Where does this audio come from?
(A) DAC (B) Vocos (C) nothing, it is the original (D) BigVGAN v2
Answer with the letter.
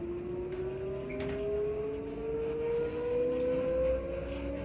C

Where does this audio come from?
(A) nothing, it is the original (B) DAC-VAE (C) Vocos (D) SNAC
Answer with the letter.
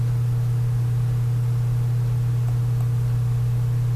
A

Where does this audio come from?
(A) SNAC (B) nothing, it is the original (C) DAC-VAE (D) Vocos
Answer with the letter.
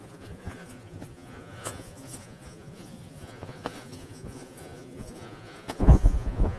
D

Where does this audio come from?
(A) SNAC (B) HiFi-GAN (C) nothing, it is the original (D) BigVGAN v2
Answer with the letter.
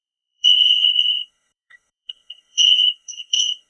A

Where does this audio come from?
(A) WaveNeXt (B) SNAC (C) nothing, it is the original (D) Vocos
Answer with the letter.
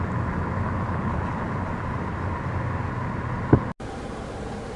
C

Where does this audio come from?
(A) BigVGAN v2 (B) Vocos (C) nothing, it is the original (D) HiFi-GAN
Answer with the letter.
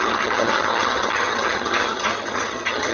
D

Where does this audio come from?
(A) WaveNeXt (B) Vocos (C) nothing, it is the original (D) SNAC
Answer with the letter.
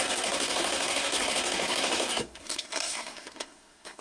D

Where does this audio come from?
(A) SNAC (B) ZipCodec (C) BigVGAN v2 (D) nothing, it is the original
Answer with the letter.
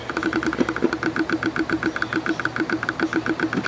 D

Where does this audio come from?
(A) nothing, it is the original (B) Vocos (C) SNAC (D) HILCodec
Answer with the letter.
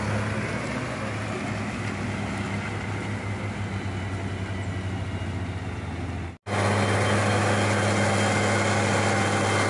A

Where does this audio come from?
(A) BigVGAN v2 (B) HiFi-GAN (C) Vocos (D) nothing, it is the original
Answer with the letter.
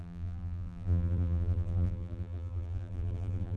A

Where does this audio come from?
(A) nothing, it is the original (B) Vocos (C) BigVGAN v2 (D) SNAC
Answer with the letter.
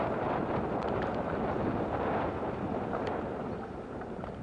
C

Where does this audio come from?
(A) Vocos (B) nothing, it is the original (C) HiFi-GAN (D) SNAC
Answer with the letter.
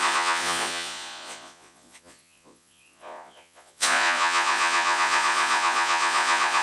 A